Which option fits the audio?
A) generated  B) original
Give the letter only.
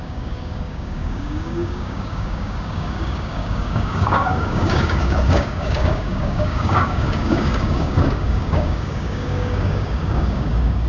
A